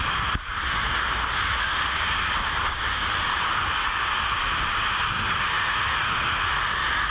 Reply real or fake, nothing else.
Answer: real